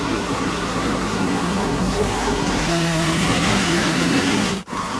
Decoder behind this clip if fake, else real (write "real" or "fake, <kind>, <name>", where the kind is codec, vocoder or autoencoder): fake, codec, SNAC